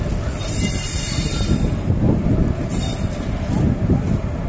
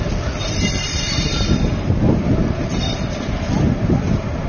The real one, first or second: first